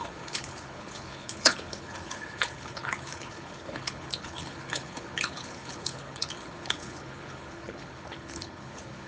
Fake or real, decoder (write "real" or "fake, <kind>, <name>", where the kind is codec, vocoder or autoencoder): fake, codec, HILCodec